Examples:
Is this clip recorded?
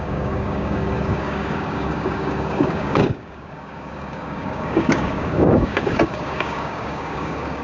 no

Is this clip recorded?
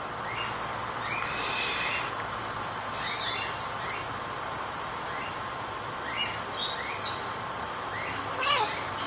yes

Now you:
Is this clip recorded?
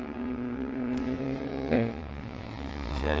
no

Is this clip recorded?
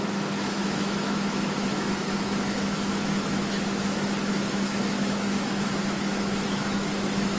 no